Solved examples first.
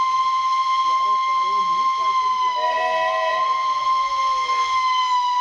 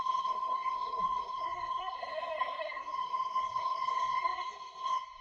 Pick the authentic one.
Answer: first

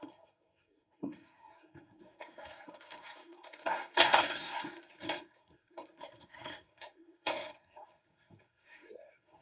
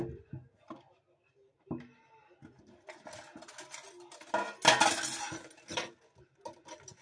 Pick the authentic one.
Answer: second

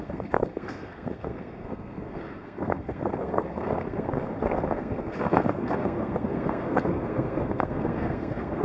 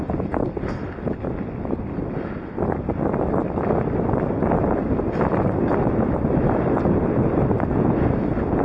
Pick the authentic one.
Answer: second